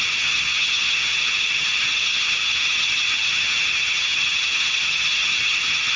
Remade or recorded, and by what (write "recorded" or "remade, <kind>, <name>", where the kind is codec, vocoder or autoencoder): remade, vocoder, HiFi-GAN